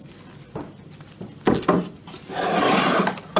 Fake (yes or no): no